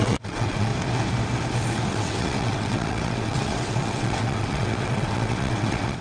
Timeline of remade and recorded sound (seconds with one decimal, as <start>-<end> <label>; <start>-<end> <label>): 0.0-0.7 remade; 0.7-1.9 recorded; 1.9-6.0 remade